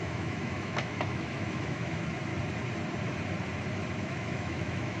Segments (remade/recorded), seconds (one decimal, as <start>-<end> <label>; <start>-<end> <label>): 0.0-2.3 remade; 2.3-4.0 recorded; 4.0-5.0 remade

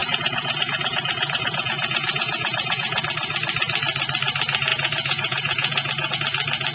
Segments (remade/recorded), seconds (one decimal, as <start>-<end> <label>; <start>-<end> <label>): 0.0-3.0 remade; 3.0-4.7 recorded; 4.7-6.1 remade; 6.1-6.7 recorded

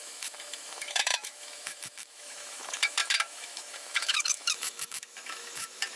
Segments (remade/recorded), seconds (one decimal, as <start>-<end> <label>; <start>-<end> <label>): 0.0-6.0 remade